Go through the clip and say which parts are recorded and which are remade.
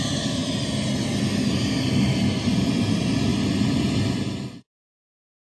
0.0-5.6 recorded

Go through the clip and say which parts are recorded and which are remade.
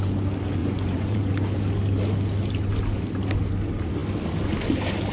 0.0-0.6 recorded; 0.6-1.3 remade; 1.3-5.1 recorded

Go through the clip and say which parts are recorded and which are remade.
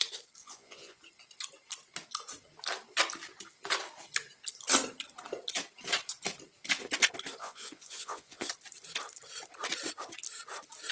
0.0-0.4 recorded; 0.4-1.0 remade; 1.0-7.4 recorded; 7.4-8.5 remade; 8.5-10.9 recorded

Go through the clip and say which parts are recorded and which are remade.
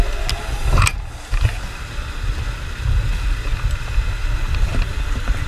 0.0-5.5 recorded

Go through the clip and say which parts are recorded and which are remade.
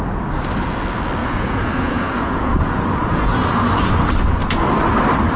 0.0-1.2 recorded; 1.2-3.7 remade; 3.7-5.4 recorded